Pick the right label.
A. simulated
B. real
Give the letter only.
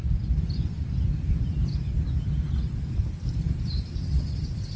A